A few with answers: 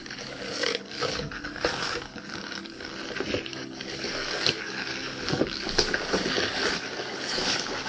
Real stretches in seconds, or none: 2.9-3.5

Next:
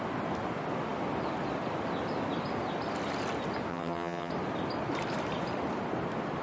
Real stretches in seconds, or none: 0.0-3.7; 4.3-6.4

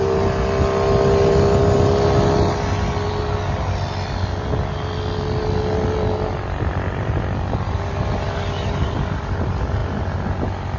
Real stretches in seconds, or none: 0.0-10.8

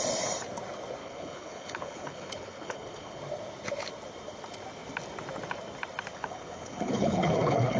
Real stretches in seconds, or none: 0.0-1.0; 3.2-6.1

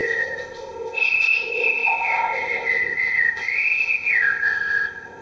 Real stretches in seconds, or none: none

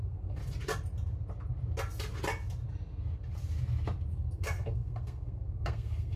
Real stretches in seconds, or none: 0.4-4.1

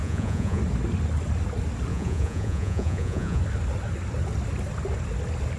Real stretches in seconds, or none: 0.6-1.9; 3.4-5.6

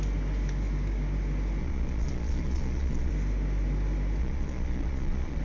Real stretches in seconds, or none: 0.0-1.6; 3.1-4.2